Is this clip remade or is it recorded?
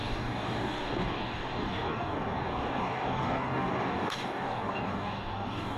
remade